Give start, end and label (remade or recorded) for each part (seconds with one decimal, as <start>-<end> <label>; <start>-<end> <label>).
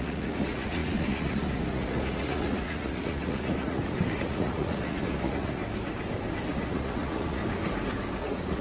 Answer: 0.0-5.6 remade; 5.6-6.5 recorded; 6.5-7.4 remade; 7.4-8.2 recorded; 8.2-8.6 remade